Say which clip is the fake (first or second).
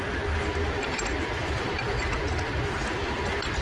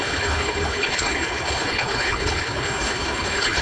second